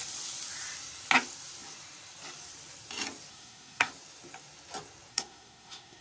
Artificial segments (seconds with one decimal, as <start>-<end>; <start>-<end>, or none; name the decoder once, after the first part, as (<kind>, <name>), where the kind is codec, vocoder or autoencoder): 3.3-3.9 (codec, SNAC); 5.1-6.0